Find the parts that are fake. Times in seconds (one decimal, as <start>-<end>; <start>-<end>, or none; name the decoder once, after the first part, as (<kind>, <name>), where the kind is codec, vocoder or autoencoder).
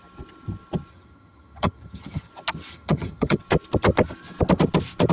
0.9-2.3 (vocoder, HiFi-GAN); 2.7-3.4